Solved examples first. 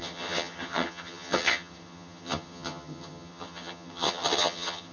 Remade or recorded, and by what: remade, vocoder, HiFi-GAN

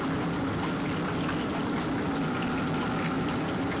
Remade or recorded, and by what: recorded